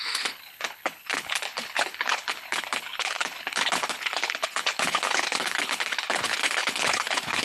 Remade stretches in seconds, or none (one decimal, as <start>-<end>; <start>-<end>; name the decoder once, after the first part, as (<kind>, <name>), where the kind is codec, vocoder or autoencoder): 0.0-7.4 (codec, HILCodec)